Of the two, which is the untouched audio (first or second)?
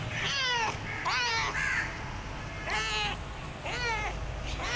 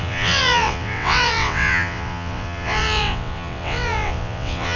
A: first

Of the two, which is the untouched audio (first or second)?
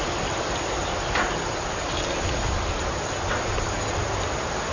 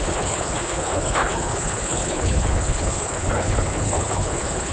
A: first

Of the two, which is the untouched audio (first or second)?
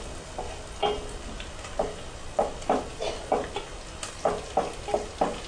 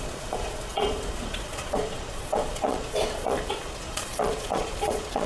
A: first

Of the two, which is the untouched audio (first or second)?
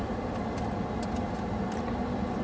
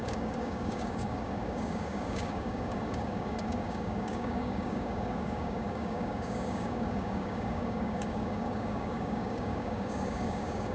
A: first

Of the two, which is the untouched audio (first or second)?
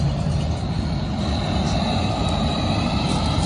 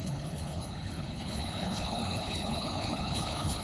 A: first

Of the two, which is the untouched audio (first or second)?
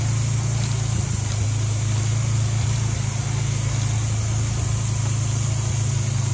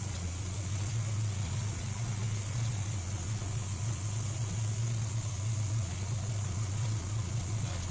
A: first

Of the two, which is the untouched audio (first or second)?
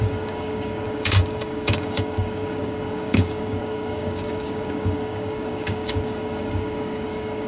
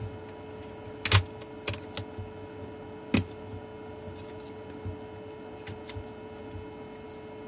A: second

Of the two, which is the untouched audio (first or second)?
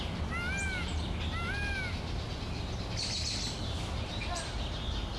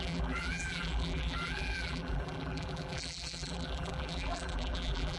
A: first